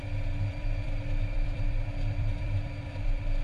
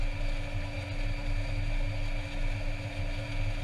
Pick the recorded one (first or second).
second